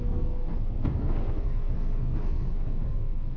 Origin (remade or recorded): remade